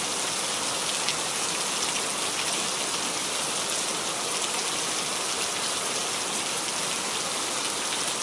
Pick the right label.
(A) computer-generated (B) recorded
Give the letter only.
B